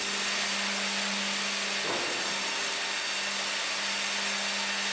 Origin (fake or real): real